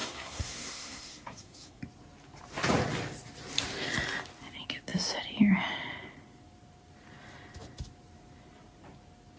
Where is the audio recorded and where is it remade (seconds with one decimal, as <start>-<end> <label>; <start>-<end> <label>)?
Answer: 0.0-1.8 remade; 1.8-9.4 recorded